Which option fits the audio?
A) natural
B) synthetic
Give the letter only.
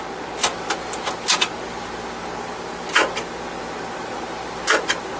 A